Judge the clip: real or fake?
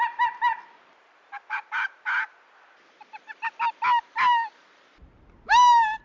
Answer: real